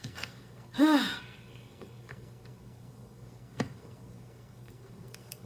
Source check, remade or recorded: remade